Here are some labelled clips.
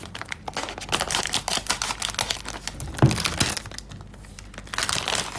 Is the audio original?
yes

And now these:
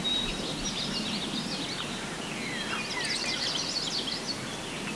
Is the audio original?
yes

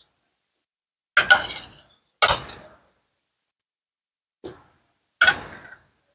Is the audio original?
yes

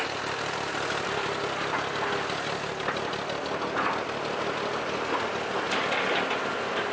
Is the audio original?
yes